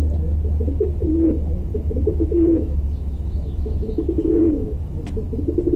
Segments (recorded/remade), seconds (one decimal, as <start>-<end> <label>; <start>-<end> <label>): 0.0-1.7 recorded; 1.7-5.0 remade; 5.0-5.8 recorded